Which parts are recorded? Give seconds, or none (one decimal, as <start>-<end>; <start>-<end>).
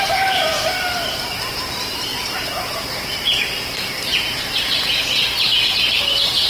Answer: 2.1-5.7